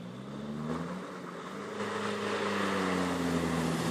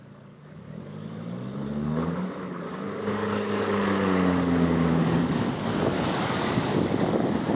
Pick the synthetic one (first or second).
second